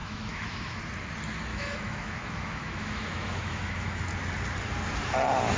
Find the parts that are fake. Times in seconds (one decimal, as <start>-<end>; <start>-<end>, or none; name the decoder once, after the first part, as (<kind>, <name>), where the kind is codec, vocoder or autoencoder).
0.0-0.8 (autoencoder, DAC-VAE); 1.5-4.0